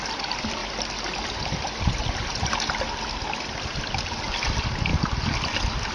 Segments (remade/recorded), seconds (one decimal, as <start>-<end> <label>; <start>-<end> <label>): 0.0-5.9 recorded